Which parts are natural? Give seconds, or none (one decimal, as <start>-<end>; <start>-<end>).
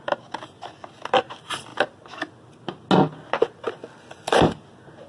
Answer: 0.0-5.1